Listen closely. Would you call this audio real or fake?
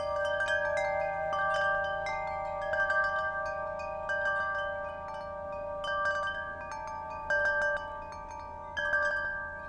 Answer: real